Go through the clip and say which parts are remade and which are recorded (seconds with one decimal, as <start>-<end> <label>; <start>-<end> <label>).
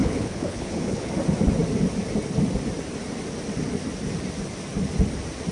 0.0-1.1 remade; 1.1-5.5 recorded